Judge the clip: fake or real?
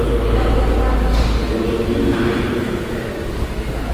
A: real